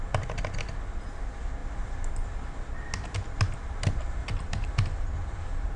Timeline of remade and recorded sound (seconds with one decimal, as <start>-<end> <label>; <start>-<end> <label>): 0.0-4.2 recorded; 4.2-5.8 remade